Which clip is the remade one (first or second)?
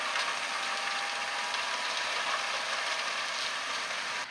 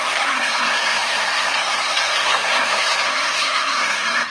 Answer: second